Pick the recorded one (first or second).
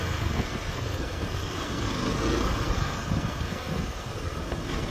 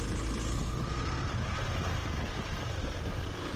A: second